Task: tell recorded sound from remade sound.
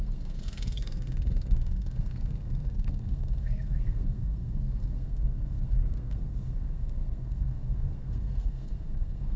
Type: remade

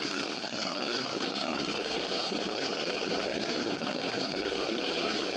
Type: remade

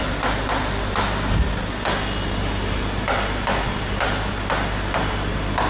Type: recorded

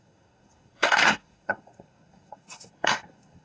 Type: remade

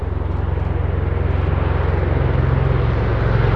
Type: recorded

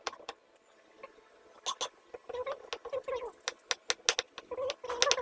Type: recorded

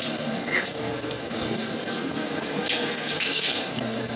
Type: remade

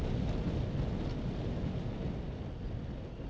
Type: recorded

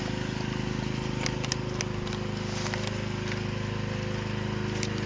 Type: recorded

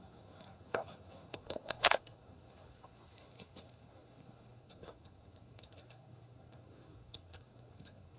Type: remade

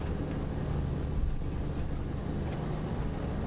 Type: recorded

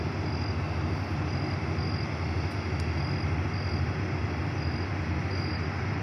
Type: recorded